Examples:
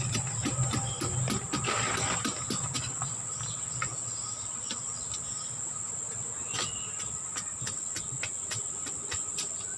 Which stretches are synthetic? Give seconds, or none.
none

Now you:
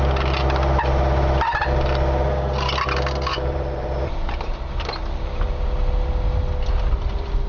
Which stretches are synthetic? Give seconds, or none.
3.3-5.0

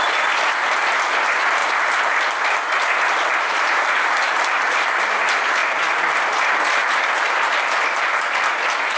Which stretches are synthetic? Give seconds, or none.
6.8-7.3

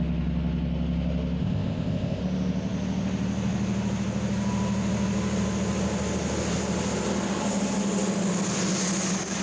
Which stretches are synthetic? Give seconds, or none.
1.4-2.2